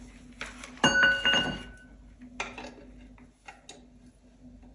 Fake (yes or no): no